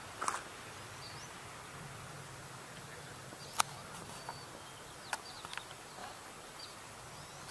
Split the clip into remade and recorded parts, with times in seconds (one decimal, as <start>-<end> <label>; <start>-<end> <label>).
0.0-7.5 recorded